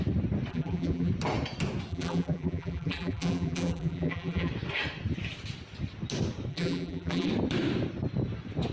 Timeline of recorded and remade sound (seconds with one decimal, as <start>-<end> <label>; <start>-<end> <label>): 0.0-0.5 recorded; 0.5-1.1 remade; 1.1-1.9 recorded; 1.9-4.5 remade; 4.5-6.5 recorded; 6.5-7.3 remade; 7.3-8.7 recorded